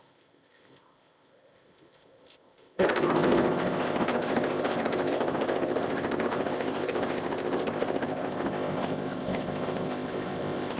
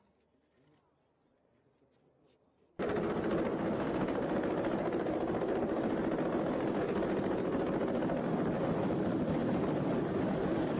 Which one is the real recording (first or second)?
second